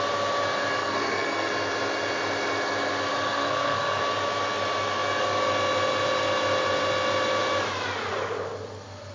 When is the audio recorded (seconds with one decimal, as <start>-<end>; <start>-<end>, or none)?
0.0-0.8; 1.5-3.3; 4.0-9.1